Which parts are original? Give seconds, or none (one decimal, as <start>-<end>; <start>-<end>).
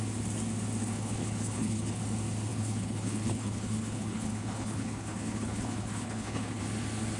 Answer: 0.0-0.8; 2.0-2.5; 6.6-7.2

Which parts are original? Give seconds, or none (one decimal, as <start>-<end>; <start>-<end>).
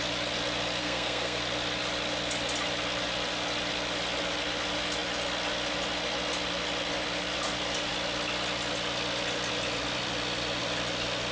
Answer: 0.0-0.8; 1.4-11.3